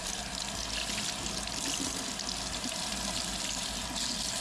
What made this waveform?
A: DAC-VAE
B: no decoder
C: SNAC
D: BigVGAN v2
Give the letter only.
B